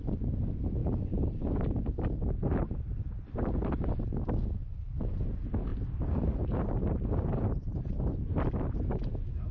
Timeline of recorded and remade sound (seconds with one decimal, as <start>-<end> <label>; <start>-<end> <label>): 0.0-0.8 recorded; 0.8-2.1 remade; 2.1-4.6 recorded; 4.6-5.2 remade; 5.2-5.7 recorded; 5.7-8.3 remade; 8.3-9.5 recorded